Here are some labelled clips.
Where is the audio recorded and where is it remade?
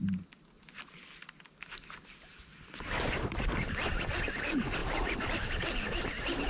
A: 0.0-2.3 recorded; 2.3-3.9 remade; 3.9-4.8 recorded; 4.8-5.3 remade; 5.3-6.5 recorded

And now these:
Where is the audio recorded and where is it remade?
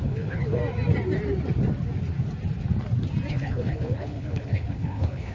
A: 0.0-0.6 remade; 0.6-3.3 recorded; 3.3-5.3 remade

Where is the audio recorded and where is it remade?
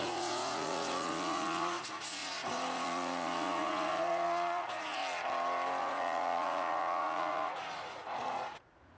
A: 0.0-5.0 remade; 5.0-5.8 recorded; 5.8-9.0 remade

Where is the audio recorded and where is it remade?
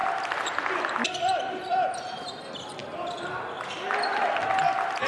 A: 0.0-5.1 recorded